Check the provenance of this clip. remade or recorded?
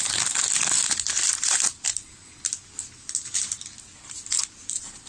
recorded